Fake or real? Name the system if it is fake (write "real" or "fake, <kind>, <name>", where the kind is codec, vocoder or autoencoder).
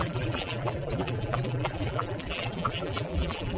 fake, vocoder, BigVGAN v2